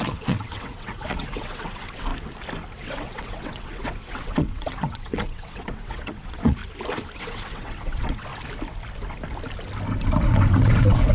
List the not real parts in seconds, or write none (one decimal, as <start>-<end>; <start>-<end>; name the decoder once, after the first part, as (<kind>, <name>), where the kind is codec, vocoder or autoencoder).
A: 0.0-2.1 (vocoder, WaveNeXt); 2.8-6.6; 7.2-8.3; 10.3-11.1